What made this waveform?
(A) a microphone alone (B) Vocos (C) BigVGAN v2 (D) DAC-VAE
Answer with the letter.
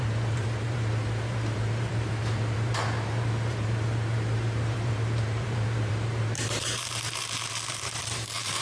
C